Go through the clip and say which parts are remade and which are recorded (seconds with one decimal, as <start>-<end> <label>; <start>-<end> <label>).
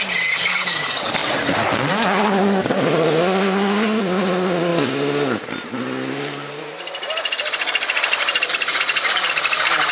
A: 0.0-9.9 recorded